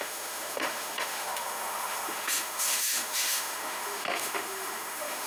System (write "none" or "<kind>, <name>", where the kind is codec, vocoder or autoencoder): autoencoder, DAC-VAE